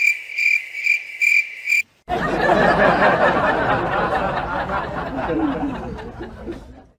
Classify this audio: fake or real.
real